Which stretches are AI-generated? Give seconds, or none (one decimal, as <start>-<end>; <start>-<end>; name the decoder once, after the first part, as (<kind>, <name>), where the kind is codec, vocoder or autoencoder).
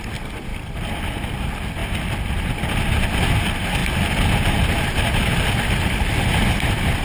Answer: 0.5-1.3 (vocoder, BigVGAN v2); 3.8-6.3